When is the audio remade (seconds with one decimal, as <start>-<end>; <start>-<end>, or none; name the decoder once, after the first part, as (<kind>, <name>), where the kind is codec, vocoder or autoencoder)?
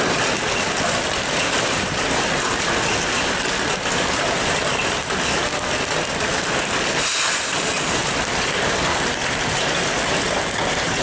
none